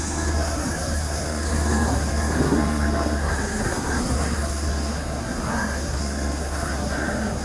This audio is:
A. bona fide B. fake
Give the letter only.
B